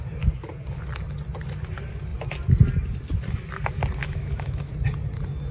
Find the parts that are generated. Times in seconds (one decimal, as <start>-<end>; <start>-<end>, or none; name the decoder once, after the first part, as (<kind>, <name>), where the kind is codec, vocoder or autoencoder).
4.0-4.7 (autoencoder, DAC-VAE)